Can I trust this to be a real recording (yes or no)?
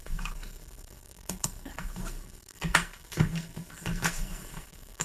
no